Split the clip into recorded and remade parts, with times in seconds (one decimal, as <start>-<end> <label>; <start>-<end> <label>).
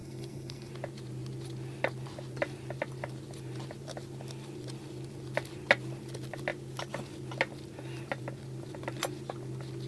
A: 0.0-0.7 remade; 0.7-9.9 recorded